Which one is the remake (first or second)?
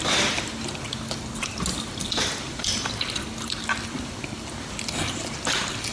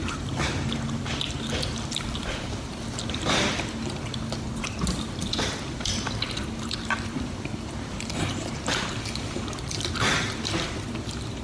second